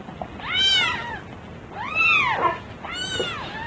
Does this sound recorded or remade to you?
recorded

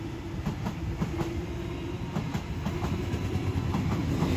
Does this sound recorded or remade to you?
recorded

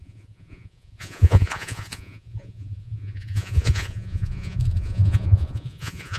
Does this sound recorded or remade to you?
remade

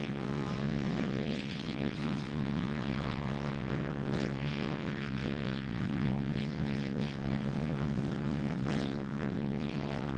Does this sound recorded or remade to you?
remade